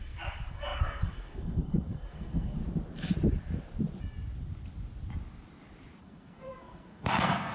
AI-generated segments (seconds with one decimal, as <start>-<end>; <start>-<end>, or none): 0.0-2.6; 6.0-7.5